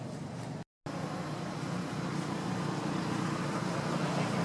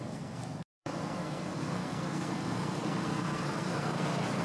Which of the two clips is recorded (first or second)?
first